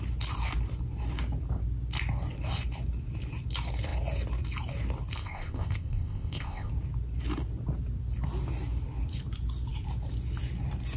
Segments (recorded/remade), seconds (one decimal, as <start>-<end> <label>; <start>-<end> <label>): 0.0-5.2 recorded; 5.2-6.7 remade; 6.7-11.0 recorded